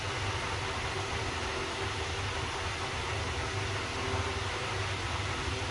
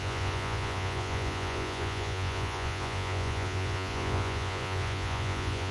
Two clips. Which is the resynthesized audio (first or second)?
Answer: second